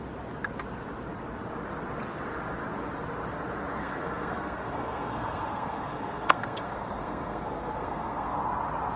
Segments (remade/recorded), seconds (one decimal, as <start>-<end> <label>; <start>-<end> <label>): 0.0-3.8 recorded; 3.8-8.4 remade; 8.4-9.0 recorded